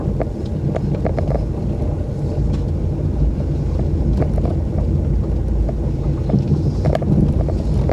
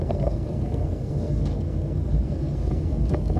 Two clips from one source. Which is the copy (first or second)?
second